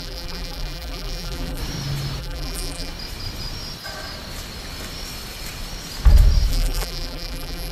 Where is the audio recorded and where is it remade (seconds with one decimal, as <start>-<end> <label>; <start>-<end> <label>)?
0.0-1.6 remade; 1.6-2.2 recorded; 2.2-2.9 remade; 2.9-6.5 recorded; 6.5-7.7 remade